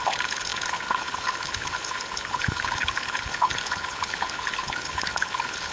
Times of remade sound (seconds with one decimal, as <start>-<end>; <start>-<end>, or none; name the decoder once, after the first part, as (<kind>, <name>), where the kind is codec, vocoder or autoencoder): 0.0-5.7 (codec, HILCodec)